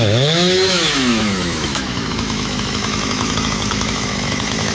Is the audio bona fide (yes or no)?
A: no